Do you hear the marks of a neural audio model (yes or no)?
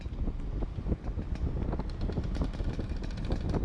no